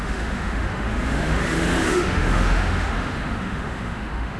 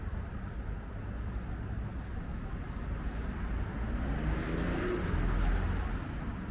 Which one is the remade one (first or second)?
first